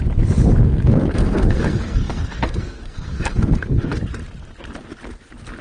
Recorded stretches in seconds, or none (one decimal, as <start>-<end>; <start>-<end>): 0.0-0.6; 4.0-5.6